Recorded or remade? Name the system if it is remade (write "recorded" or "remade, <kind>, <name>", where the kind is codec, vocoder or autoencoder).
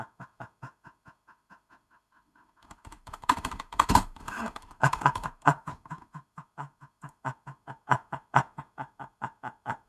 remade, autoencoder, DAC-VAE